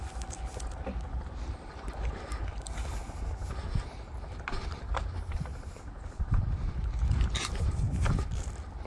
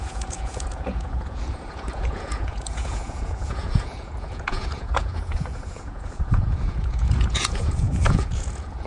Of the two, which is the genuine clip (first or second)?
first